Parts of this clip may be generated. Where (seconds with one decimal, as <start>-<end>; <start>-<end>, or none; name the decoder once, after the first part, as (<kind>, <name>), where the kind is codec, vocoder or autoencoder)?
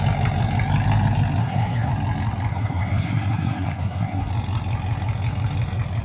1.4-1.9 (codec, SNAC); 2.5-4.3